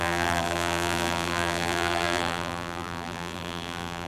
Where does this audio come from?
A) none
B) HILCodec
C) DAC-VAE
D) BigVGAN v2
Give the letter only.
D